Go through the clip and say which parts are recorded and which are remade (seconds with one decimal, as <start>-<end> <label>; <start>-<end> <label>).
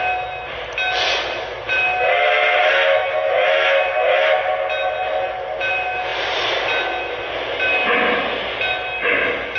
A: 0.0-3.0 recorded; 3.0-3.5 remade; 3.5-9.6 recorded